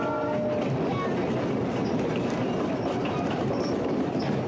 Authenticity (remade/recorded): recorded